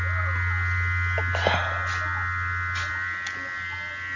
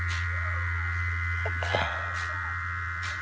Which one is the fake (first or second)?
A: second